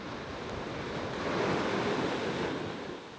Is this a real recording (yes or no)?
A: yes